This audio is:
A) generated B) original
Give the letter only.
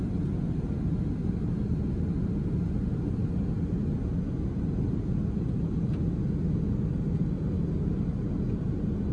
B